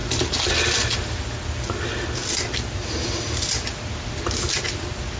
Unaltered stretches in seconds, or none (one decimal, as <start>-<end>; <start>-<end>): 0.0-5.2